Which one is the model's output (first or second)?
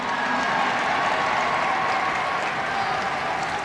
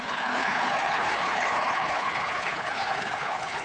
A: second